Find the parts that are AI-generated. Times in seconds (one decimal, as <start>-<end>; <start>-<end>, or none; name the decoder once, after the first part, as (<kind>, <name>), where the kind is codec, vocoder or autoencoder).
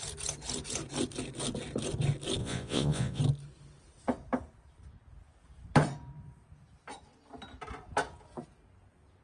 2.4-3.2 (vocoder, Vocos)